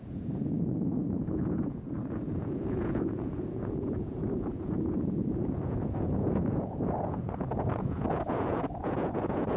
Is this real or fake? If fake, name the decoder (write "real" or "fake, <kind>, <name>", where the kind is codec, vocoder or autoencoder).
fake, vocoder, Vocos